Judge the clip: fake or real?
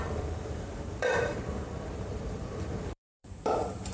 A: fake